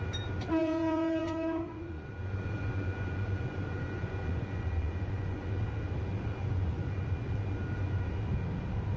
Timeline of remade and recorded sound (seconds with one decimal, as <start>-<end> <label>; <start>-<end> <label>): 0.0-0.6 recorded; 0.6-5.5 remade; 5.5-6.4 recorded; 6.4-7.0 remade; 7.0-9.0 recorded